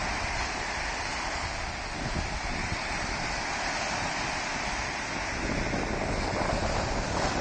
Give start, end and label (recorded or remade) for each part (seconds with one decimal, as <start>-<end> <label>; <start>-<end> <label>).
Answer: 0.0-2.6 recorded; 2.6-3.3 remade; 3.3-7.4 recorded